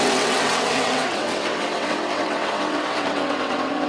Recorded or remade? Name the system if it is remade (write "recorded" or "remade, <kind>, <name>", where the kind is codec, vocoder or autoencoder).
remade, vocoder, WaveNeXt